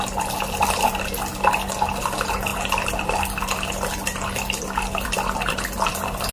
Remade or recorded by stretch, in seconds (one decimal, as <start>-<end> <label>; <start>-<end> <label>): 0.0-2.5 recorded; 2.5-6.3 remade